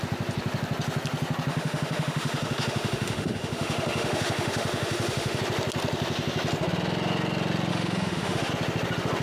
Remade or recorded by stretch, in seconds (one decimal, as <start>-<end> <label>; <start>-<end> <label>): 0.0-1.5 recorded; 1.5-5.4 remade; 5.4-7.7 recorded; 7.7-8.5 remade; 8.5-9.2 recorded